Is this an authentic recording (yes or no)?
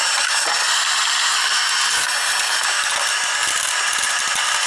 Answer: yes